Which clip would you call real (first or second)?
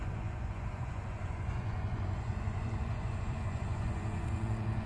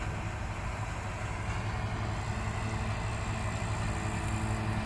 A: second